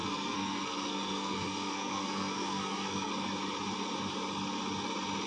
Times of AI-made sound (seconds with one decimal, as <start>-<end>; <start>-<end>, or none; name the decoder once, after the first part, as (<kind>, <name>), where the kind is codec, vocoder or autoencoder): 0.0-3.1 (codec, SNAC)